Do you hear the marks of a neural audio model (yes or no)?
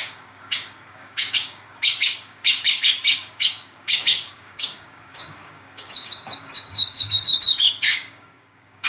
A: yes